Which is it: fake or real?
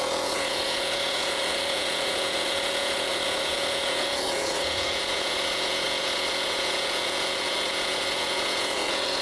fake